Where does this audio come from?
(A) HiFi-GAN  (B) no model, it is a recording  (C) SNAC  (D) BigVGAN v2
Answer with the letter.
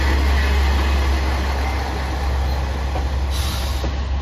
B